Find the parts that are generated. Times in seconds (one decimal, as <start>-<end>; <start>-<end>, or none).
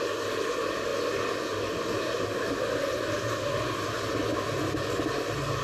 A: none